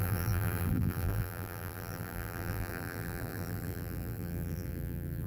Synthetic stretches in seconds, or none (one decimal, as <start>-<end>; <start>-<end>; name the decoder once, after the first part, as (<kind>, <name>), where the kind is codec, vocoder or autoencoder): 0.0-5.3 (vocoder, BigVGAN v2)